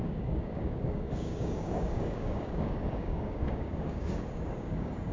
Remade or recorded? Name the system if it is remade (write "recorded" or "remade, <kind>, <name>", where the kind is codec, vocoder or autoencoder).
remade, codec, DAC